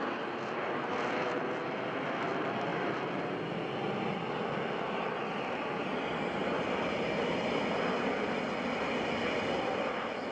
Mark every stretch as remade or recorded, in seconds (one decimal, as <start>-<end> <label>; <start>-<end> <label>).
0.0-10.3 recorded